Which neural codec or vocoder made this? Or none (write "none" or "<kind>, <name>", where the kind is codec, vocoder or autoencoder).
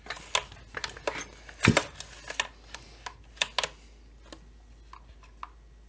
none